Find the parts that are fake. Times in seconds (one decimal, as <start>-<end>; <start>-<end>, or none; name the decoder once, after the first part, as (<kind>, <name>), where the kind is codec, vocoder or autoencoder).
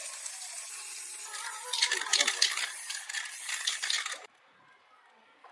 none